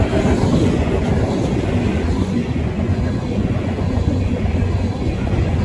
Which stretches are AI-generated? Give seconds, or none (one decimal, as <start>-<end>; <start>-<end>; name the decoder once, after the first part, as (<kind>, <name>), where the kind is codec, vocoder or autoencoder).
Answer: 0.6-1.1 (vocoder, Vocos); 1.9-5.6